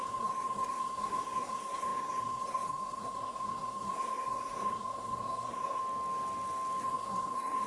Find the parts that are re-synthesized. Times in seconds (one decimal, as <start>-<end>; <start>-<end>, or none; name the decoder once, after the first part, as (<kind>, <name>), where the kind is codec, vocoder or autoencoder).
0.0-5.8 (codec, SNAC); 6.8-7.7